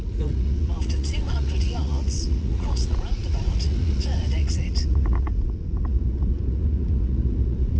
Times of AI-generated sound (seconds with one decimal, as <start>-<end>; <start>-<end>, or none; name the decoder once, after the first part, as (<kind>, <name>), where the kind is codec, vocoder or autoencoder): 0.0-7.8 (vocoder, Vocos)